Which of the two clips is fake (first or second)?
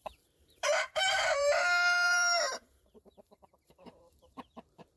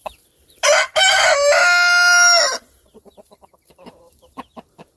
first